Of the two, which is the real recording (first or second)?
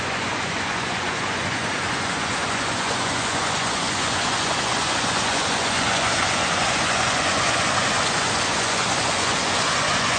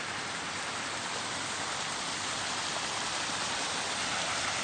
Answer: second